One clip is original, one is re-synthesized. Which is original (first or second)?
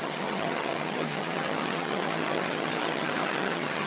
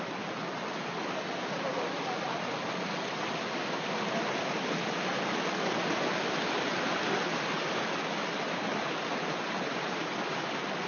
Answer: second